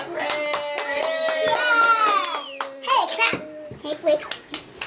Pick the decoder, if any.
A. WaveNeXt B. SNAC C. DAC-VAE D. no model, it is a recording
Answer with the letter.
D